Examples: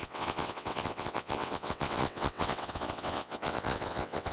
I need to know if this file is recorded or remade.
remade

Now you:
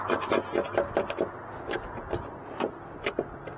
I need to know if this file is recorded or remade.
recorded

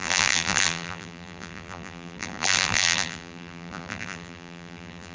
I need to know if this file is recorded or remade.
remade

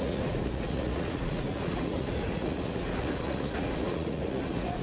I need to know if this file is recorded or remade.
remade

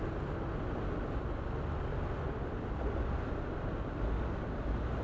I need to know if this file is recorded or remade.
recorded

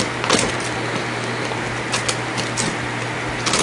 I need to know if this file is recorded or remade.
recorded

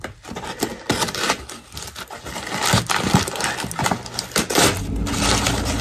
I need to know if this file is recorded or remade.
recorded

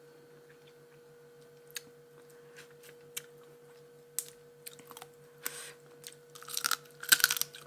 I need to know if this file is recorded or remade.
recorded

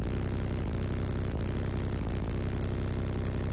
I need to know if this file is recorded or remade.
recorded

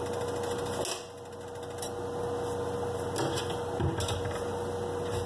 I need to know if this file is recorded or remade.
recorded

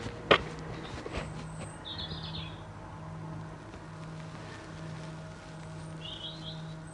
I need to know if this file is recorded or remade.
recorded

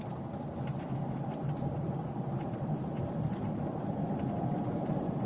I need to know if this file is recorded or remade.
remade